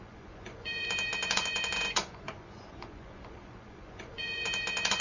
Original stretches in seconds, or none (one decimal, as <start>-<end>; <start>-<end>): none